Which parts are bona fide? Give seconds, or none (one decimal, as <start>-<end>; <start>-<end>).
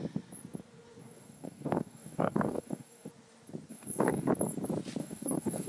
0.0-1.0; 3.1-3.7; 4.3-5.0